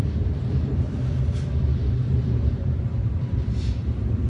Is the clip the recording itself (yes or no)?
no